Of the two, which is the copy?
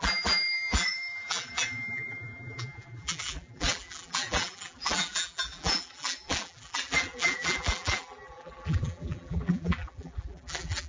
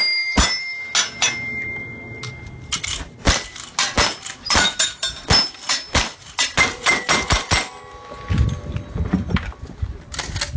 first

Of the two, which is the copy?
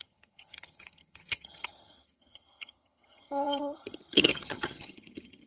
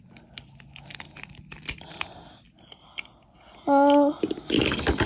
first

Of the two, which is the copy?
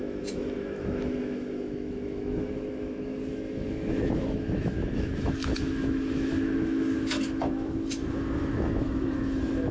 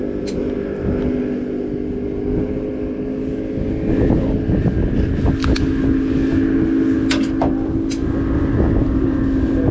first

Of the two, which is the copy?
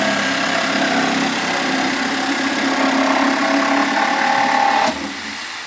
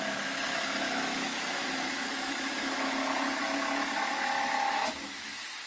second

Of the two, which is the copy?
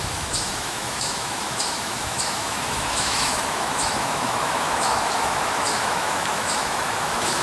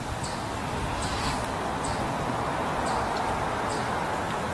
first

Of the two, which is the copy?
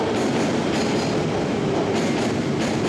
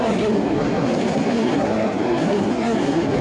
second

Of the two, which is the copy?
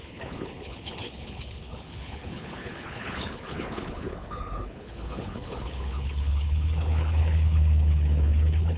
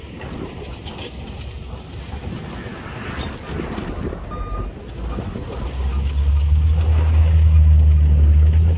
first